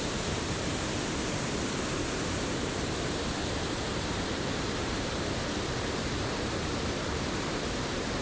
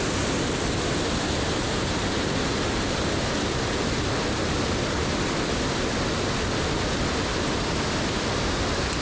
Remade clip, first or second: first